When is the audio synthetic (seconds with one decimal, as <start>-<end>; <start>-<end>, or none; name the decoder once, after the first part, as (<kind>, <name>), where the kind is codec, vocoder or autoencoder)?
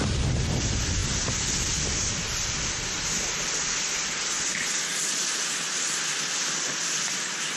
none